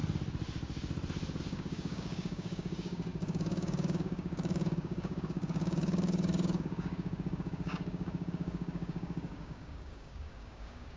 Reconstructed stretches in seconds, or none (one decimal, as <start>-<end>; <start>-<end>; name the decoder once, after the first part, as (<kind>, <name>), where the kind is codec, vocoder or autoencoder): 1.4-11.0 (codec, DAC)